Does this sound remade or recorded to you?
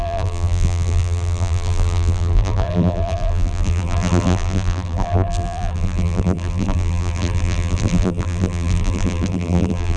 remade